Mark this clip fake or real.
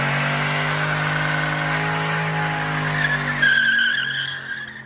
real